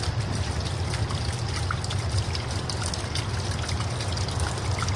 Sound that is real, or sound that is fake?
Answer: real